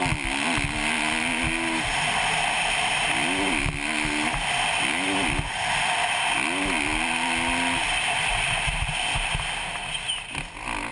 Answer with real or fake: real